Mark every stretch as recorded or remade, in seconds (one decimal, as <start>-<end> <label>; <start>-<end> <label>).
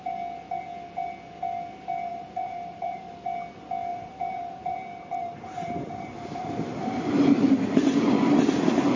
0.0-2.1 recorded; 2.1-3.1 remade; 3.1-3.9 recorded; 3.9-8.1 remade; 8.1-9.0 recorded